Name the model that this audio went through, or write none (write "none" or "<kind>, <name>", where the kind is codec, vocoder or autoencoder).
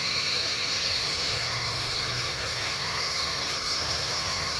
codec, SNAC